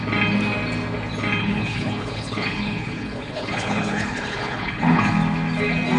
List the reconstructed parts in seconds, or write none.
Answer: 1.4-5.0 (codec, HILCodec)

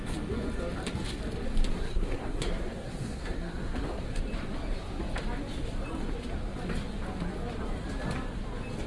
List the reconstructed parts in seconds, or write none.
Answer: 1.7-4.2 (codec, SNAC)

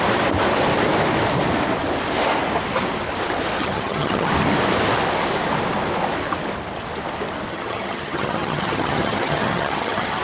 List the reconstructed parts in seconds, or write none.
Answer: 3.6-4.3 (vocoder, HiFi-GAN); 7.5-10.2